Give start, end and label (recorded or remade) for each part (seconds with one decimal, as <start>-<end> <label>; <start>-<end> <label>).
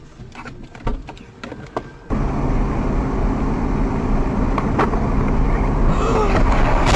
0.0-7.0 recorded